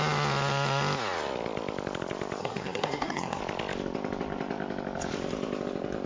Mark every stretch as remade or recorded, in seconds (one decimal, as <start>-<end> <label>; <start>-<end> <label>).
0.0-2.4 recorded; 2.4-3.4 remade; 3.4-6.1 recorded